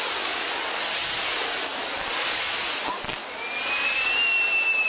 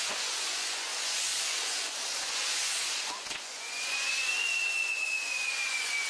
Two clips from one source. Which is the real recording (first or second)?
first